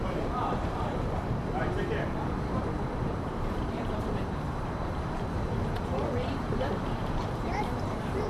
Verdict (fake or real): fake